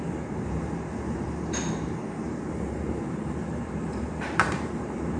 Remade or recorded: remade